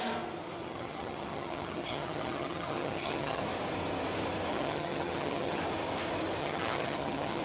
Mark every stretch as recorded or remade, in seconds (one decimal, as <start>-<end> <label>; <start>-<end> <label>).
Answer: 0.0-0.6 recorded; 0.6-3.4 remade; 3.4-4.5 recorded; 4.5-5.6 remade; 5.6-6.4 recorded; 6.4-7.4 remade